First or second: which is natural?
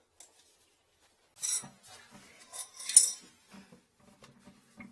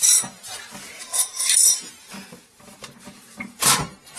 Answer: first